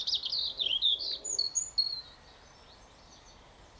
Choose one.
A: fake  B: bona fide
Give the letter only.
B